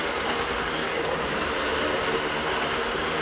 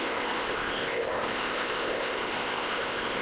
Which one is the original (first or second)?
first